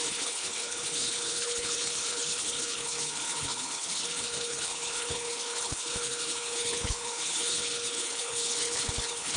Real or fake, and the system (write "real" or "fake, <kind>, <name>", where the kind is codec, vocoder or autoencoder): fake, codec, HILCodec